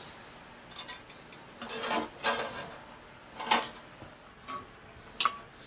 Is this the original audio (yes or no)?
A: yes